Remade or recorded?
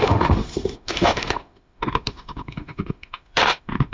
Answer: remade